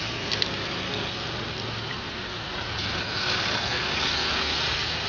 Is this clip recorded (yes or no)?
yes